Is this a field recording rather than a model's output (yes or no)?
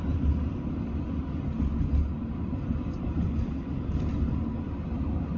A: yes